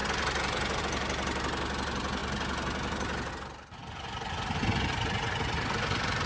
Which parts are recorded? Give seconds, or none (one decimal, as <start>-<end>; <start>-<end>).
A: 0.8-3.8; 4.6-6.3